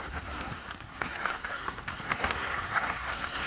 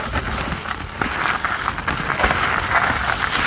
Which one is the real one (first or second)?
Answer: second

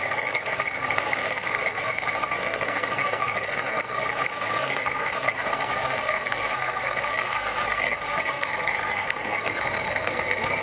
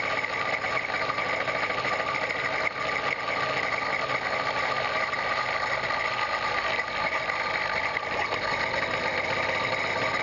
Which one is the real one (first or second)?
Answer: second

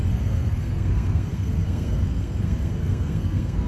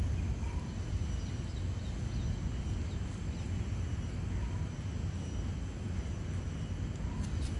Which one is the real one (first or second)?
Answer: second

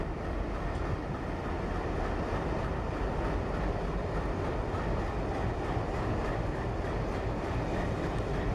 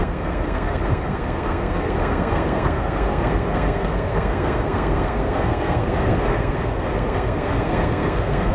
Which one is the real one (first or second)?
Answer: first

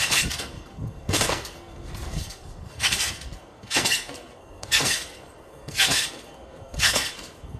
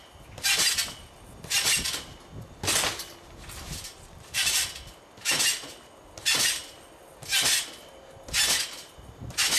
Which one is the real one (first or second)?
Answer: second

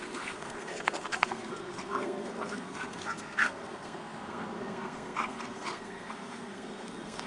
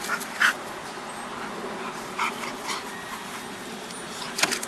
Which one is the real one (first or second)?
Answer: second